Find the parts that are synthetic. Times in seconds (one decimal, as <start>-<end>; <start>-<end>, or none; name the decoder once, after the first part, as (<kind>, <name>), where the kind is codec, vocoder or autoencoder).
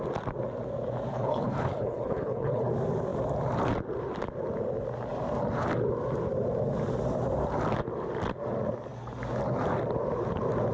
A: 1.1-2.7 (codec, HILCodec)